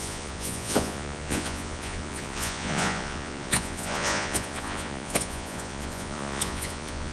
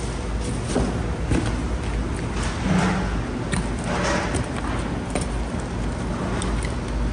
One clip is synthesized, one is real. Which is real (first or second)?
second